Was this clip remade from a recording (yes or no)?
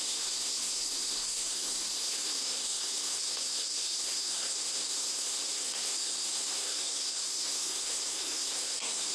yes